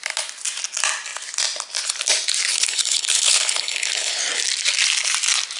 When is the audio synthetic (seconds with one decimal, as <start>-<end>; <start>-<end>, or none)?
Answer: 2.5-4.2